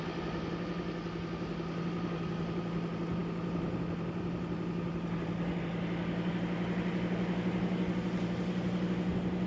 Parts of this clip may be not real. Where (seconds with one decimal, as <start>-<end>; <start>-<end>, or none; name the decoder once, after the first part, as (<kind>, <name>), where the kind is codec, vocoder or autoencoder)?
none